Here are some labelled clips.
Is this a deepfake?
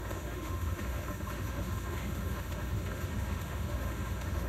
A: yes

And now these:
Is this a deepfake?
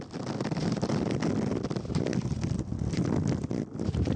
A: yes